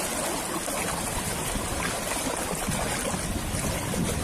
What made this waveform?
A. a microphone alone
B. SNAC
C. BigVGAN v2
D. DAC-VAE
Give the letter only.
A